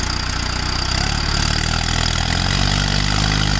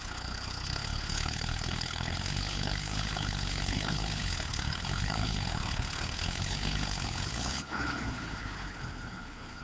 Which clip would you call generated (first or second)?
second